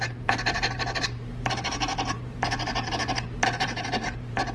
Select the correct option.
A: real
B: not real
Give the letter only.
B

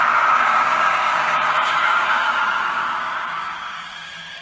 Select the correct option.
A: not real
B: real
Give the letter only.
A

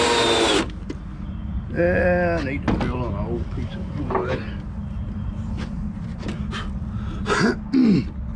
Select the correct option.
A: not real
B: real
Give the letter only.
B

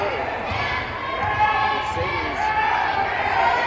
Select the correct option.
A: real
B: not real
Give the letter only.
A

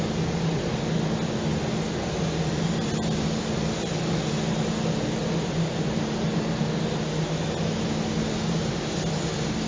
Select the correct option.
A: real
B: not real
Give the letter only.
A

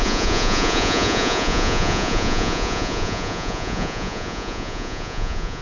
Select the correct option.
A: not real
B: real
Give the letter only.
A